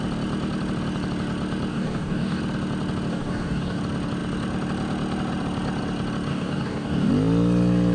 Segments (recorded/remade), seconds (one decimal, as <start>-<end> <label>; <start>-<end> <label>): 0.0-1.7 recorded; 1.7-2.4 remade; 2.4-3.1 recorded; 3.1-3.8 remade; 3.8-6.3 recorded; 6.3-7.1 remade; 7.1-7.9 recorded